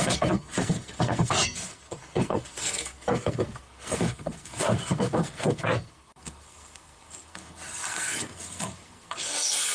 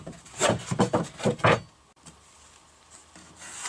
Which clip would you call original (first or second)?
second